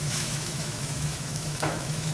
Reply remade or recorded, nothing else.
remade